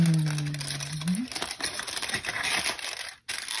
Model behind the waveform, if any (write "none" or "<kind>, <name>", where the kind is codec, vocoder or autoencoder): none